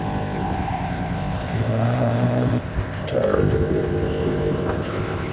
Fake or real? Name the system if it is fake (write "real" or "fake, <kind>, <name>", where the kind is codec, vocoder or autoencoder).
fake, codec, ZipCodec